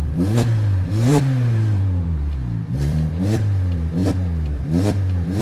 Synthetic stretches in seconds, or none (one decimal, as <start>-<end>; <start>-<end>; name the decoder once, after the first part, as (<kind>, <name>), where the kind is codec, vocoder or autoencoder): 0.0-5.4 (vocoder, BigVGAN v2)